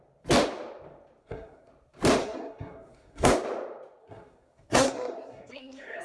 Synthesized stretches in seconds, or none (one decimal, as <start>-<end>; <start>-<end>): 1.2-1.7; 2.2-3.3; 4.0-6.0